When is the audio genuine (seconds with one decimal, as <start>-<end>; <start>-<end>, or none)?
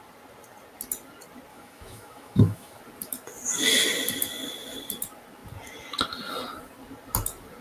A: 0.0-1.5; 2.8-7.6